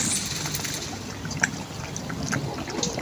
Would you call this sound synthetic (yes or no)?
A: no